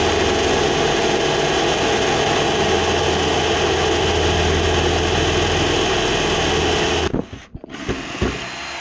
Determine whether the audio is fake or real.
real